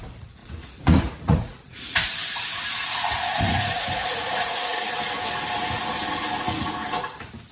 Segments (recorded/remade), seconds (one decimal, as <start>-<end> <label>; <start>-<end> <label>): 0.0-0.4 recorded; 0.4-2.1 remade; 2.1-2.8 recorded; 2.8-4.8 remade; 4.8-7.5 recorded